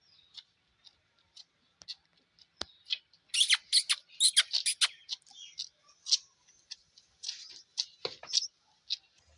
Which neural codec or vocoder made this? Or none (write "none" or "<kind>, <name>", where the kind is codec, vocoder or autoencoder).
none